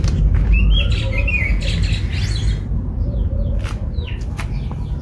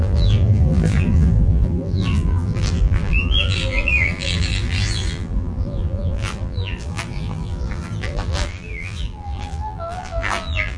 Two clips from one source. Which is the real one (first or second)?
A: first